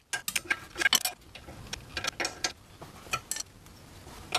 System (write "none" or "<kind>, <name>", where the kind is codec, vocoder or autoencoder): none